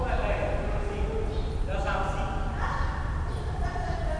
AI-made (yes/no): no